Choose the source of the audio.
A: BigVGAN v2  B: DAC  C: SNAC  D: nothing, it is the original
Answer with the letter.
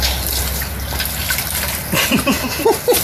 D